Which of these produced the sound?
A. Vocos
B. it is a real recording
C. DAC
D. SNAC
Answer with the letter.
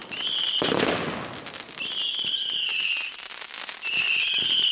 B